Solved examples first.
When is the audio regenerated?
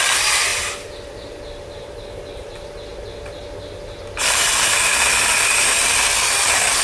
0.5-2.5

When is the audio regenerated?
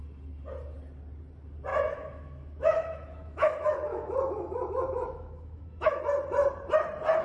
1.7-6.0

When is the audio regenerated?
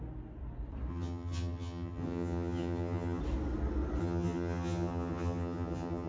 0.9-3.2; 4.0-6.1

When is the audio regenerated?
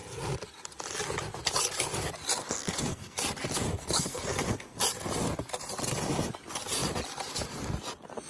2.4-3.2; 3.7-4.8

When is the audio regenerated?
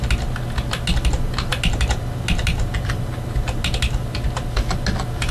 none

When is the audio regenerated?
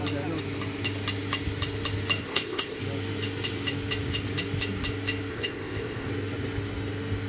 2.2-2.8; 5.3-6.1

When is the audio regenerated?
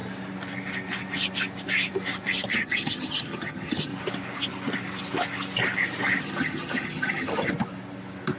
2.5-3.9; 6.2-7.5